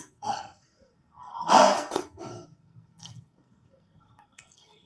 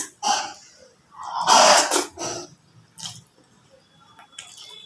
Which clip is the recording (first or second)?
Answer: second